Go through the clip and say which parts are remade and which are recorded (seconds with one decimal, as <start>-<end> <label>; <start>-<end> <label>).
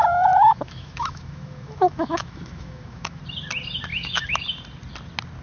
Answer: 0.0-3.2 remade; 3.2-3.9 recorded; 3.9-4.4 remade; 4.4-5.4 recorded